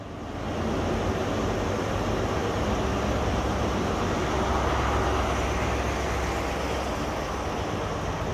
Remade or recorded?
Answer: recorded